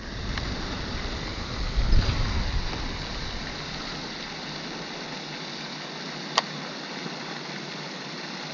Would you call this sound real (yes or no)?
yes